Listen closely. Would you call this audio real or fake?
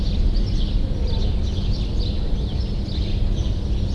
real